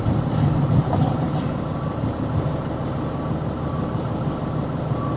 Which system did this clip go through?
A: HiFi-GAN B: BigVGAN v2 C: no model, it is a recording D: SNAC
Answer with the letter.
C